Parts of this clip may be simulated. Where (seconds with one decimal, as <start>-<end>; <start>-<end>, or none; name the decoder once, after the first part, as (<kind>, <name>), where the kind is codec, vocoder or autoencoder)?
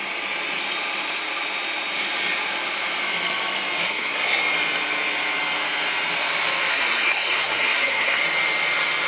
3.8-4.4 (codec, SNAC); 6.7-8.2